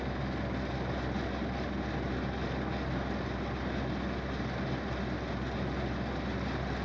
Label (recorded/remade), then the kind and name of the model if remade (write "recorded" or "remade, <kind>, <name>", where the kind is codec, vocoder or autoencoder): recorded